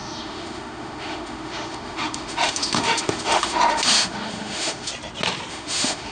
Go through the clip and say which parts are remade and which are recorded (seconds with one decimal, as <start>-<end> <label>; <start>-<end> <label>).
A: 0.0-4.9 remade; 4.9-5.5 recorded; 5.5-6.1 remade